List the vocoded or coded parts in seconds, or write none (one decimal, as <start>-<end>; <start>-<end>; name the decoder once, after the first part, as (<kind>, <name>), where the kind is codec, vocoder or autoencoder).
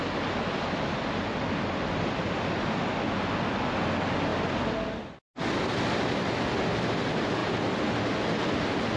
none